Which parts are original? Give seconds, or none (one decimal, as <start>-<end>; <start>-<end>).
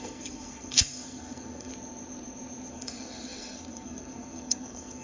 1.7-2.7